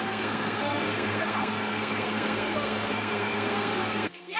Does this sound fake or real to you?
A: fake